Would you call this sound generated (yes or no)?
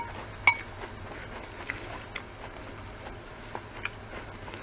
no